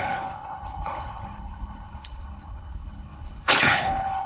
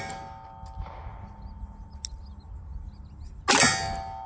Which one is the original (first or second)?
second